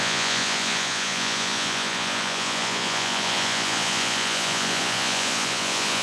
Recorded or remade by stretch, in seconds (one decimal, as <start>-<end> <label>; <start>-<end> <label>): 0.0-6.0 remade